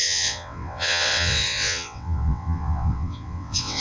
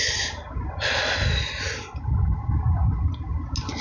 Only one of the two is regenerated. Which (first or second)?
first